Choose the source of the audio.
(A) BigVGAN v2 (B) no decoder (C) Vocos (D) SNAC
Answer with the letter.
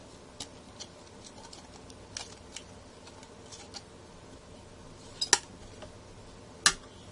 B